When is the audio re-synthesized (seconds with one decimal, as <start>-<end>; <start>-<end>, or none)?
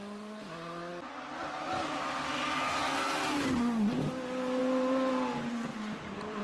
none